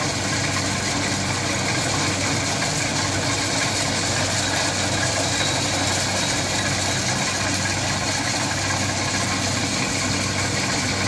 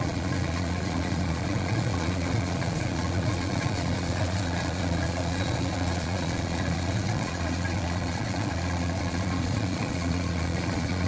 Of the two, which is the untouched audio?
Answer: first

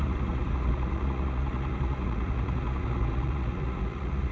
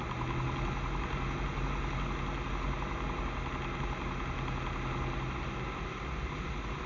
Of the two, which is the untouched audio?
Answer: second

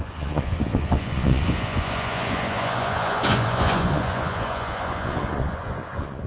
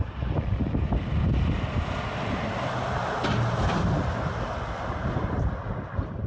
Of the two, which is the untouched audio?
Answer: second